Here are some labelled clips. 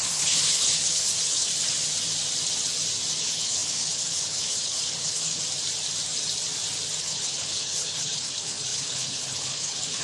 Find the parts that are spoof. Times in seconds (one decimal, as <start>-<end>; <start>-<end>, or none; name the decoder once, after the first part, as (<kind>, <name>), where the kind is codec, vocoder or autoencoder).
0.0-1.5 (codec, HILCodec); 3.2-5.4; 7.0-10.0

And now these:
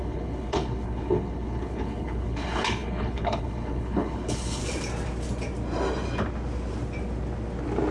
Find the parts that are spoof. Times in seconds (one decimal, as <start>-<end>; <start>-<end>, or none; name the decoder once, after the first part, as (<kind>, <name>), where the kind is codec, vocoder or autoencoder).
0.0-4.6 (codec, HILCodec)

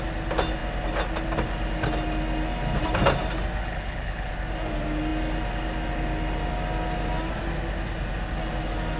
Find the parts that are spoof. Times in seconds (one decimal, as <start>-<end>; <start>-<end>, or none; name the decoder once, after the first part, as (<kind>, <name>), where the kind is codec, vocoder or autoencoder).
3.6-4.3 (codec, HILCodec)

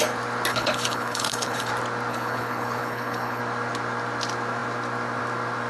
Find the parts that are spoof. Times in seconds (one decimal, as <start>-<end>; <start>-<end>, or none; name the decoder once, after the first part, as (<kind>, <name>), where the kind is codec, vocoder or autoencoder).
0.5-1.7 (codec, HILCodec); 2.1-3.4